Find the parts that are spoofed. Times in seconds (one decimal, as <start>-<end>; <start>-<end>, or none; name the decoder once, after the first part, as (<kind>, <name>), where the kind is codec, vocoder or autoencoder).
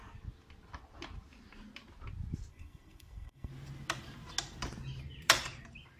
2.5-3.5 (codec, SNAC)